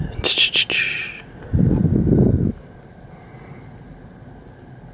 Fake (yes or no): no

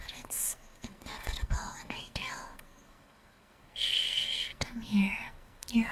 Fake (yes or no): yes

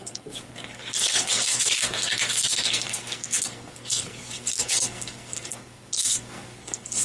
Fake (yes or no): yes